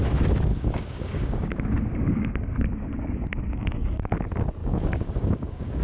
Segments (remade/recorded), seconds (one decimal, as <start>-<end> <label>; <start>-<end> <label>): 0.0-0.5 recorded; 0.5-4.0 remade; 4.0-4.6 recorded; 4.6-5.8 remade